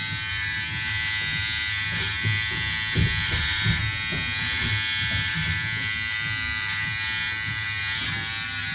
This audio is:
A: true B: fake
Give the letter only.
A